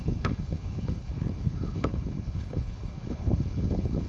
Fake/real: fake